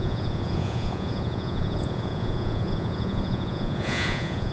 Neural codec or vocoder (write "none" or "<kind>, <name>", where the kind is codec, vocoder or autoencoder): vocoder, Vocos